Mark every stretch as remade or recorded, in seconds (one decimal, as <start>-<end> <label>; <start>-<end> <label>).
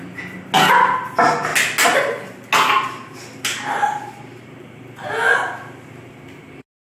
0.0-6.9 recorded